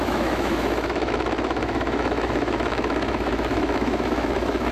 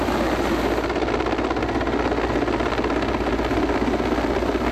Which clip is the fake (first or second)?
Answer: first